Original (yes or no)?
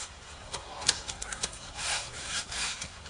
no